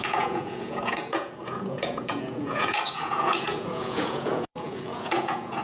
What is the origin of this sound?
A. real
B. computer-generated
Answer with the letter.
B